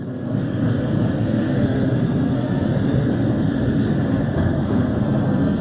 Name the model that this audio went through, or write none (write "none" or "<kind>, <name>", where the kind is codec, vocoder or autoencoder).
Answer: codec, SNAC